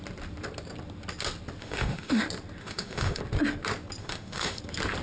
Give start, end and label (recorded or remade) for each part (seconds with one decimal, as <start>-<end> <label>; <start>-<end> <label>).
0.0-1.6 recorded; 1.6-2.2 remade; 2.2-2.6 recorded; 2.6-3.2 remade; 3.2-4.0 recorded; 4.0-4.6 remade; 4.6-5.0 recorded

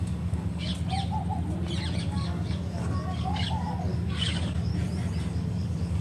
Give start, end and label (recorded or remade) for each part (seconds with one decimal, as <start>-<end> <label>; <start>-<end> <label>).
0.0-0.7 remade; 0.7-2.0 recorded; 2.0-4.7 remade; 4.7-5.3 recorded; 5.3-6.0 remade

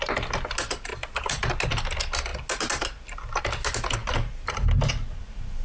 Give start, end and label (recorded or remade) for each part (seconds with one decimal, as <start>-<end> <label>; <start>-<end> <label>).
0.0-0.9 recorded; 0.9-1.5 remade; 1.5-5.6 recorded

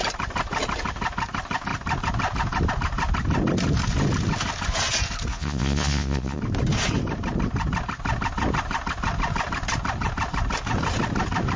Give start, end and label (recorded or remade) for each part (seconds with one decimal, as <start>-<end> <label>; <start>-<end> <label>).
0.0-5.3 recorded; 5.3-6.4 remade; 6.4-11.6 recorded

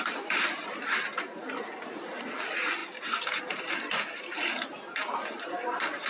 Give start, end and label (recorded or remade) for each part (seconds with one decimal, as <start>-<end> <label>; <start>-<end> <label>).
0.0-6.1 recorded

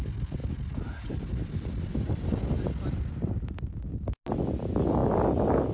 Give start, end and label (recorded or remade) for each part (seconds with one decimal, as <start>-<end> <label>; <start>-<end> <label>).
0.0-5.7 recorded

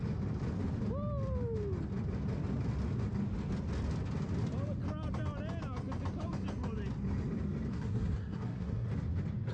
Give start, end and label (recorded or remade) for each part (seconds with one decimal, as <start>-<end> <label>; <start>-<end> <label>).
0.0-7.7 recorded; 7.7-8.9 remade; 8.9-9.5 recorded

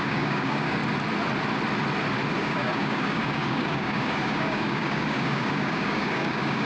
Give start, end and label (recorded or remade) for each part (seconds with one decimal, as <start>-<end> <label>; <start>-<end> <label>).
0.0-0.8 remade; 0.8-2.3 recorded; 2.3-6.7 remade